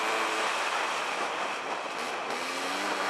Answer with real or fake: real